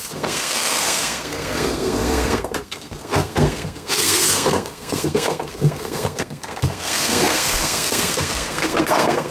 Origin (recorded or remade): remade